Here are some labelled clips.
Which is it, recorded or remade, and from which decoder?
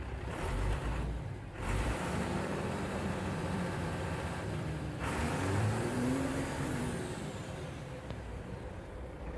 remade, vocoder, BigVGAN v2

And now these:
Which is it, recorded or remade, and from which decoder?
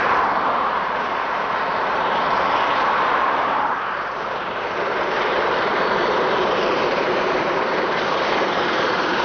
remade, vocoder, BigVGAN v2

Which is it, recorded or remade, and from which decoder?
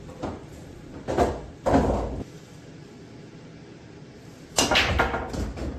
recorded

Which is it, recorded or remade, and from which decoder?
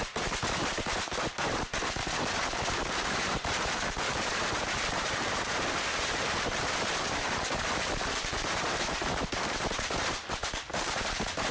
remade, vocoder, BigVGAN v2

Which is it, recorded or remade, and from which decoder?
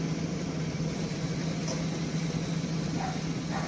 recorded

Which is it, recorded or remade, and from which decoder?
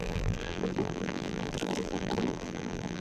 remade, vocoder, BigVGAN v2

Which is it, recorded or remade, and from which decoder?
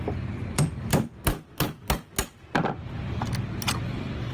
recorded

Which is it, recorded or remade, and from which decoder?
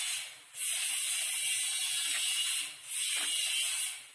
recorded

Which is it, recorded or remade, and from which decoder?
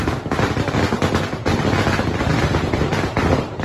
remade, vocoder, BigVGAN v2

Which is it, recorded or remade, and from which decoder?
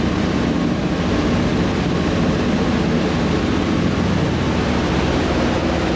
remade, vocoder, BigVGAN v2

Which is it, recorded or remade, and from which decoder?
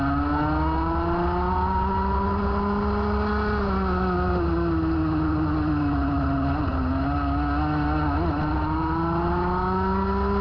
recorded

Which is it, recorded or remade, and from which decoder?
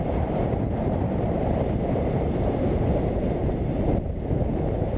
remade, vocoder, BigVGAN v2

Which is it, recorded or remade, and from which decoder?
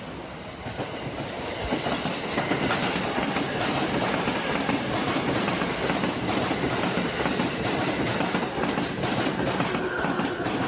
recorded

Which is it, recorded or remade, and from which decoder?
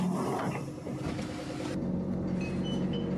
recorded